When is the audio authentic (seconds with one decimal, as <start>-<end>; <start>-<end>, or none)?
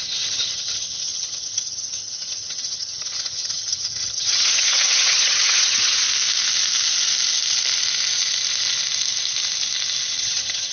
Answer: 6.0-10.2